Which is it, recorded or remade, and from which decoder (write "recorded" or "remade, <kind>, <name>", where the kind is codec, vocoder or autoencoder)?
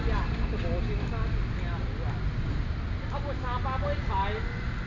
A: recorded